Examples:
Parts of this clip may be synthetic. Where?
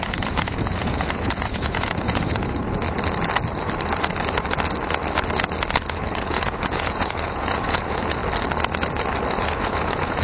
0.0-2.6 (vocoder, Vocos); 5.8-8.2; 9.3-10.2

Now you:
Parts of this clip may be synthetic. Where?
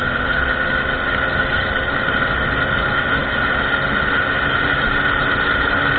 none